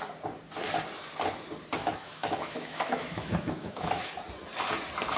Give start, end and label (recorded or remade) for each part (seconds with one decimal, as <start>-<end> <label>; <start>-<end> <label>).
0.0-1.8 recorded; 1.8-4.1 remade; 4.1-5.2 recorded